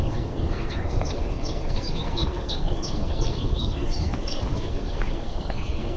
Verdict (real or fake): fake